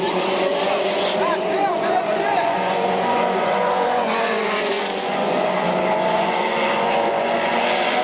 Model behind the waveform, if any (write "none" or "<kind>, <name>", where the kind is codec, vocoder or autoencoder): vocoder, Vocos